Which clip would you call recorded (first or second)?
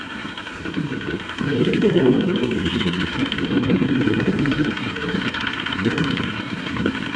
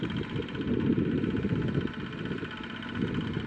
second